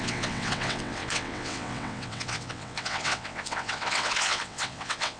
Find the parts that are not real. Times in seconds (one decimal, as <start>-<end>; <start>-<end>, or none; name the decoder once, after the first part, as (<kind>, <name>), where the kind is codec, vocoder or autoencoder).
0.0-5.2 (vocoder, WaveNeXt)